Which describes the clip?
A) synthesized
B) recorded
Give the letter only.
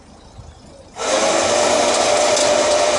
B